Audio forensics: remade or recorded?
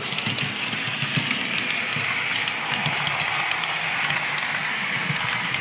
recorded